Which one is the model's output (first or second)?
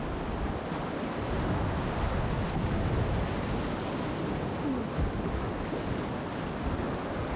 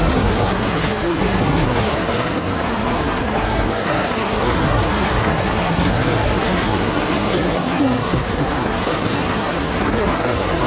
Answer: second